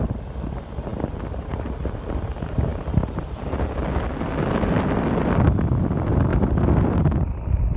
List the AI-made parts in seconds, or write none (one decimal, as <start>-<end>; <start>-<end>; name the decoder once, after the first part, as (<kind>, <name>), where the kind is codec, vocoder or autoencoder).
none

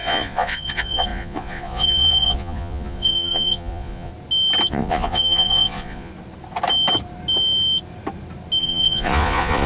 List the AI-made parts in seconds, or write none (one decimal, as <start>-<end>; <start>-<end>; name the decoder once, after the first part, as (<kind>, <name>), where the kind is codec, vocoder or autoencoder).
0.0-4.1 (vocoder, Vocos); 4.7-6.1; 8.6-9.7

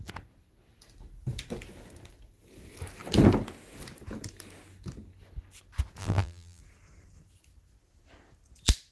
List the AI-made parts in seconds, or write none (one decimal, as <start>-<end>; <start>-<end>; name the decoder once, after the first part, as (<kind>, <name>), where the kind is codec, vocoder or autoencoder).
6.0-6.6 (vocoder, BigVGAN v2)

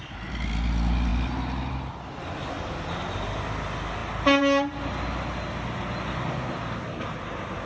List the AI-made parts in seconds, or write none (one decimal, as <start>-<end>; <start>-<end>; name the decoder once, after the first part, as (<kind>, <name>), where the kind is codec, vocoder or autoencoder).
none

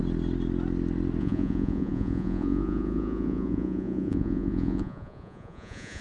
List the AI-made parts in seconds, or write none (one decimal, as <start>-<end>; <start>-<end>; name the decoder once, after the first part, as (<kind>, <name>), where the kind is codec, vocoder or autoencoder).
1.2-6.0 (vocoder, Vocos)

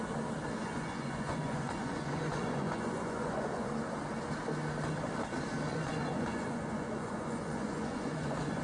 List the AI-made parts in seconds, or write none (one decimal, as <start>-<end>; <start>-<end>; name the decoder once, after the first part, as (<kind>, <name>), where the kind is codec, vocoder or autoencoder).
0.6-3.7 (vocoder, Vocos); 5.7-8.6